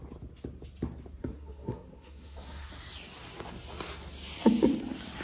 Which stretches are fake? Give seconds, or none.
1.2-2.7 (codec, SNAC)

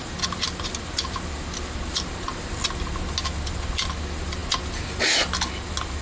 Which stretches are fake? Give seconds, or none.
none